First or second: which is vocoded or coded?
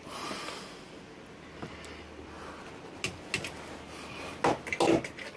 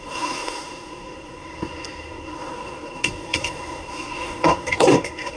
second